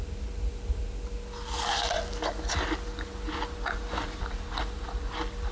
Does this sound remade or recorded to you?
recorded